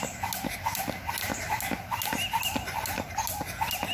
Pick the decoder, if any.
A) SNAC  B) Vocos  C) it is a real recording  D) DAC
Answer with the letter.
C